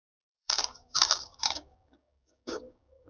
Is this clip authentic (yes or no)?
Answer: no